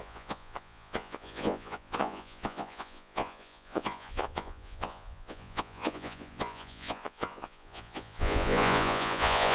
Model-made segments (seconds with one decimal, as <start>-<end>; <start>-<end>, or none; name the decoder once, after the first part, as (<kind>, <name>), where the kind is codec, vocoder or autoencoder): 0.0-9.5 (vocoder, Vocos)